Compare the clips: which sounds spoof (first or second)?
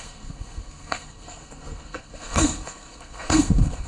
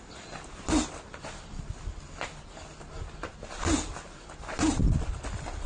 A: first